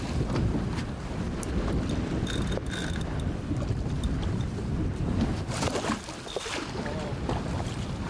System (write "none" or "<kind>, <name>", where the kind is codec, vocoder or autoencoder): none